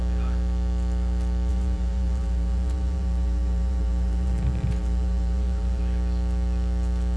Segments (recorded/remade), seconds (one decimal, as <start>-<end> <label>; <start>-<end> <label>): 0.0-1.5 recorded; 1.5-5.8 remade; 5.8-7.2 recorded